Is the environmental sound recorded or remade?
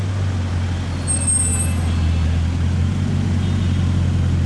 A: recorded